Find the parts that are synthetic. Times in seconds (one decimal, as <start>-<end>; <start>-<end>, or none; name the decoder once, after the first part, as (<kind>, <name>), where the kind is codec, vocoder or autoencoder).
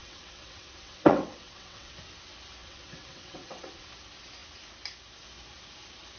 0.0-1.9 (vocoder, WaveNeXt); 2.6-3.9